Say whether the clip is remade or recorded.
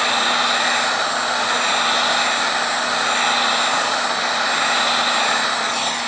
recorded